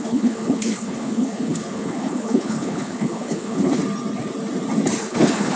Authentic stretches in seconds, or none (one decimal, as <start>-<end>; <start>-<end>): 3.8-5.0